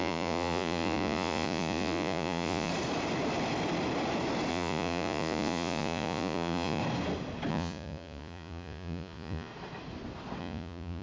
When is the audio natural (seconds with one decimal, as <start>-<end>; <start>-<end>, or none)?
2.7-4.5; 6.8-7.5; 9.5-10.4